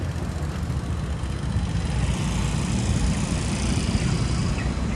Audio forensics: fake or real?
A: real